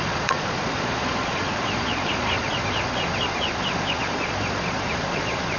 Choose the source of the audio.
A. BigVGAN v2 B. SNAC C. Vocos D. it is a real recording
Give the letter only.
C